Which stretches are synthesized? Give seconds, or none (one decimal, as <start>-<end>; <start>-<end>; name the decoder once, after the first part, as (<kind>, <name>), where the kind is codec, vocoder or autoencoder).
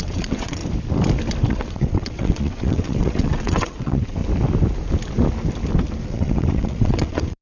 0.0-0.6 (vocoder, WaveNeXt); 1.5-4.2; 6.1-7.4